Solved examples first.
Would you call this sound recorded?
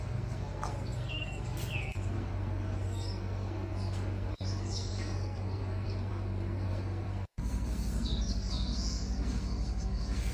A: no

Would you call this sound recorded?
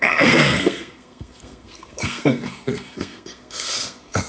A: no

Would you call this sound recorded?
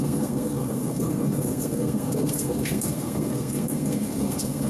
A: no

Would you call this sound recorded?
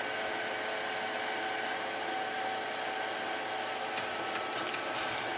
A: yes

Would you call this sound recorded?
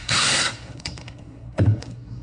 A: no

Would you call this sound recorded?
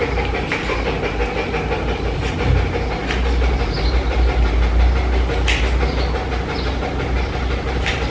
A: yes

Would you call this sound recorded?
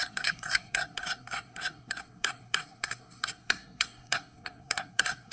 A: no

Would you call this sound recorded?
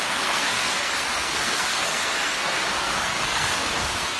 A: no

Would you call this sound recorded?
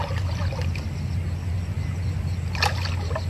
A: yes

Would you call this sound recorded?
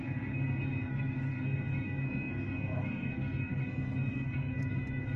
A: no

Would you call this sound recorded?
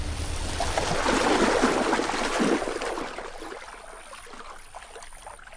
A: yes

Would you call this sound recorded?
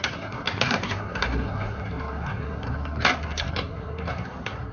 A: no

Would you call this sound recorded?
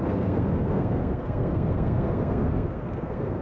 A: no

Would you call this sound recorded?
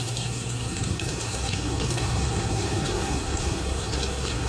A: no